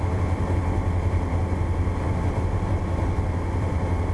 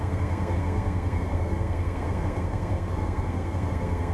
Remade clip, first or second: second